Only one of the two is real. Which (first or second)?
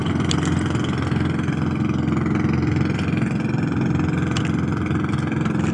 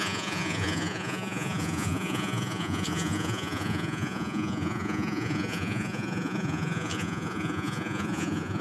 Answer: first